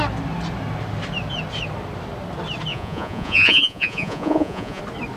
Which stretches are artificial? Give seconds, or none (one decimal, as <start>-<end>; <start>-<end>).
2.7-4.8